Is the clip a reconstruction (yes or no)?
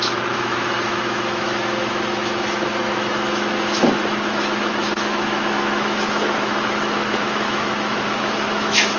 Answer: yes